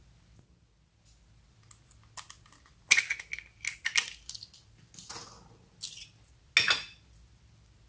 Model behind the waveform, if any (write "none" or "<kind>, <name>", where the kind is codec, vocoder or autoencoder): none